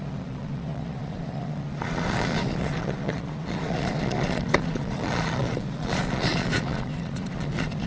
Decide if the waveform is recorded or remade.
remade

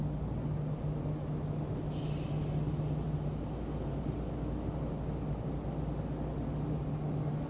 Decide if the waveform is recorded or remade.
recorded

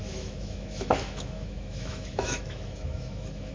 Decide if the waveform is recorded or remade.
remade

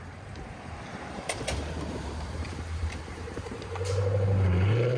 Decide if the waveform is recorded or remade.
remade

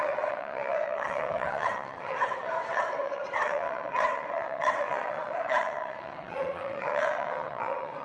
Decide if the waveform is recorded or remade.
remade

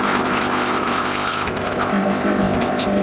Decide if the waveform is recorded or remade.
remade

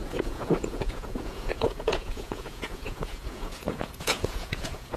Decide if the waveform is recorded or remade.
remade